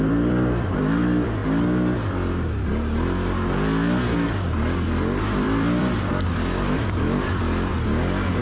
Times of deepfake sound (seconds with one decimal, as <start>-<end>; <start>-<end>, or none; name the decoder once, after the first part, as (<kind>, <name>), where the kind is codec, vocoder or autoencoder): 0.0-1.4 (vocoder, BigVGAN v2); 5.2-7.7